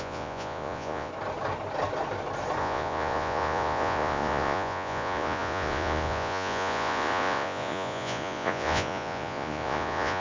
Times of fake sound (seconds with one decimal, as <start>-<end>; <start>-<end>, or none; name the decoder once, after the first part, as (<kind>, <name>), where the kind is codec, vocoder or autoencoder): 0.0-1.1 (vocoder, Vocos); 2.6-10.2